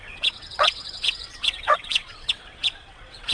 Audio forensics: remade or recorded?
remade